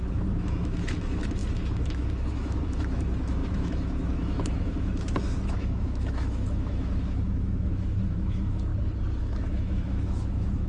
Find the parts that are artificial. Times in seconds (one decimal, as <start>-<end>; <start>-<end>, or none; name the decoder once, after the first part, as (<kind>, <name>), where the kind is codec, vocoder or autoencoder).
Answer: 0.0-8.7 (autoencoder, DAC-VAE); 9.2-10.7